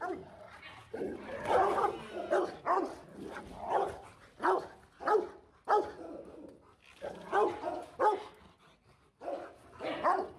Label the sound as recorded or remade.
recorded